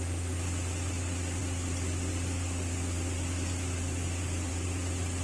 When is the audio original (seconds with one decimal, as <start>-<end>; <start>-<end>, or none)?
0.0-5.2